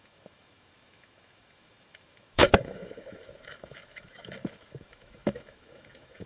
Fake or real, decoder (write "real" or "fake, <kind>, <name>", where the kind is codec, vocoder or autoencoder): fake, autoencoder, DAC-VAE